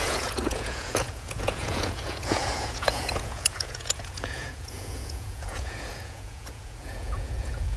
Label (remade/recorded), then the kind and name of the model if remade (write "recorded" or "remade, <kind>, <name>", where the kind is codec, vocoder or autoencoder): remade, vocoder, Vocos